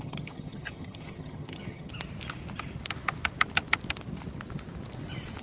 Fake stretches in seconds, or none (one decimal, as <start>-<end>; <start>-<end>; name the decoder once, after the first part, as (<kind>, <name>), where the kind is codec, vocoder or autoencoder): 0.0-1.9 (vocoder, HiFi-GAN)